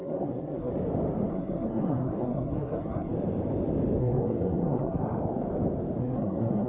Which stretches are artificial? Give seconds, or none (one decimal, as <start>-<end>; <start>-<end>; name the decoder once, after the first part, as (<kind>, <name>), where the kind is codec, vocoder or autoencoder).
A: 0.0-0.7 (codec, SNAC); 1.3-3.1; 4.0-5.0; 6.0-6.7